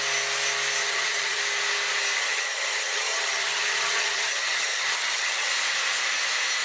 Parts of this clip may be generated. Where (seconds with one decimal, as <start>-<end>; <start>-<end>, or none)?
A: 0.8-1.4; 2.2-5.5